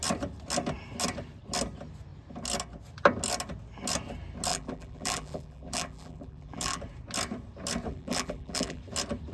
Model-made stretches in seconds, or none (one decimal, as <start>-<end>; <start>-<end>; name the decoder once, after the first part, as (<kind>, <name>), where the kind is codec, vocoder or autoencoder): 4.5-6.8 (vocoder, BigVGAN v2); 7.9-8.8